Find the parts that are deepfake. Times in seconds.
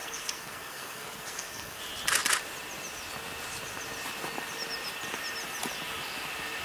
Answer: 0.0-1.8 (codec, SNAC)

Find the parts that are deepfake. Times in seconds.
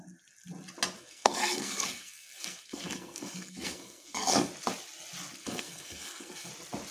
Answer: 1.0-4.5 (codec, SNAC); 5.4-6.5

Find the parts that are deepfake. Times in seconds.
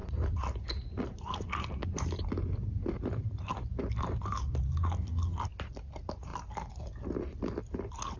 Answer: none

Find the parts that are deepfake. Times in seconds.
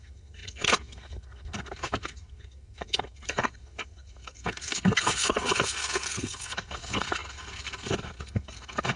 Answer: 0.0-9.0 (codec, SNAC)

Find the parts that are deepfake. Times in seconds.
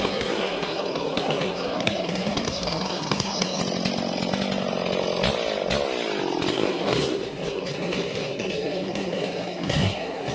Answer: 0.0-3.6 (codec, SNAC); 6.5-10.3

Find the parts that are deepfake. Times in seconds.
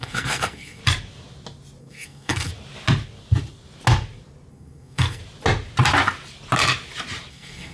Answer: 0.0-0.8 (codec, SNAC); 1.8-2.5; 4.5-5.2; 7.3-7.7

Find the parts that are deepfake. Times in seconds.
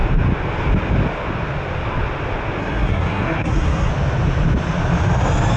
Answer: 2.6-3.9 (codec, SNAC)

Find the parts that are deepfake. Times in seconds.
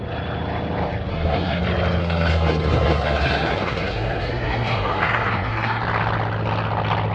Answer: 1.1-1.6 (codec, SNAC); 2.0-5.8